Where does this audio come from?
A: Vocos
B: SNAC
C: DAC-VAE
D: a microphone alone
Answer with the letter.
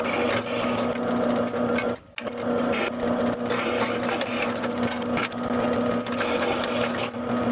D